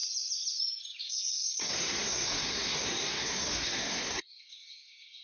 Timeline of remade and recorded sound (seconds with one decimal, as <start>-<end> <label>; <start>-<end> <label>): 0.0-1.0 recorded; 1.0-5.2 remade